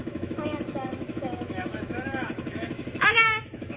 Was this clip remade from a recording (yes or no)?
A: yes